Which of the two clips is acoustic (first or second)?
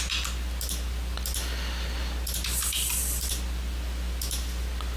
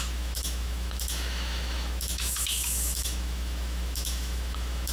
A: first